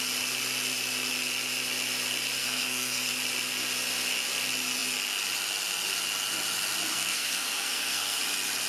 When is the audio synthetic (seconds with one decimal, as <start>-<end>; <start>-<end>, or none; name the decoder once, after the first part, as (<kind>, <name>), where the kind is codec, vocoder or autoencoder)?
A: 2.4-3.1 (codec, SNAC); 6.9-8.2